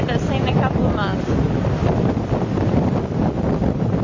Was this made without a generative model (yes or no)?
yes